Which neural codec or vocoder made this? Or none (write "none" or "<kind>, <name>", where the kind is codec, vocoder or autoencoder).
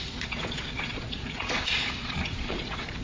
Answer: vocoder, Vocos